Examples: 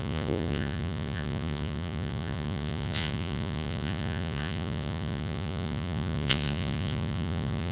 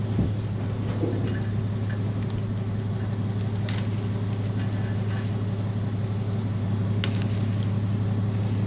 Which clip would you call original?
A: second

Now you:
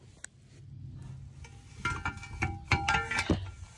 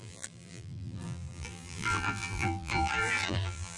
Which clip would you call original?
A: first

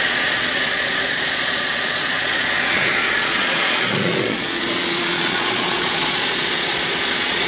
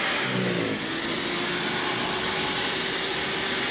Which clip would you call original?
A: second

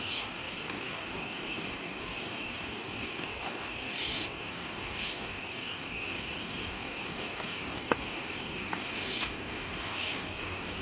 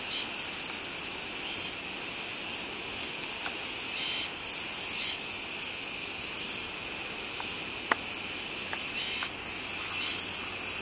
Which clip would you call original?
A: second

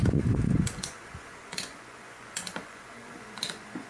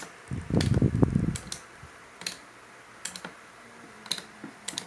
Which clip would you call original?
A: second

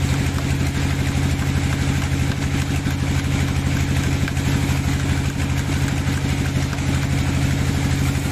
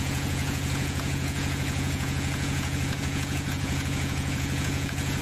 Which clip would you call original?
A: first